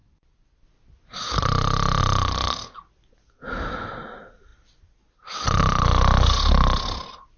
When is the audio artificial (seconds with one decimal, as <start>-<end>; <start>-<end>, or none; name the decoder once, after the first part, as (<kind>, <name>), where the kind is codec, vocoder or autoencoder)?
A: none